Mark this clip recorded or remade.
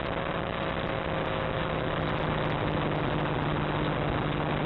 recorded